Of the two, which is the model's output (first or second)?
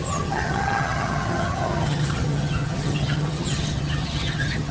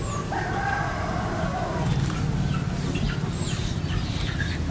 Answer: first